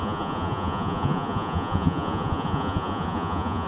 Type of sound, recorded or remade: remade